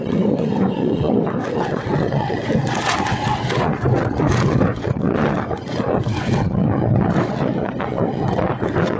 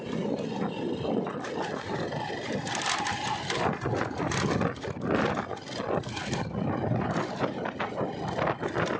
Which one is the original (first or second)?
second